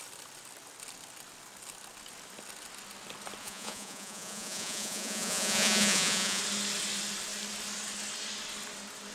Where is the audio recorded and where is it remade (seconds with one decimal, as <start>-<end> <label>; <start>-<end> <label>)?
0.0-3.4 recorded; 3.4-6.4 remade; 6.4-9.1 recorded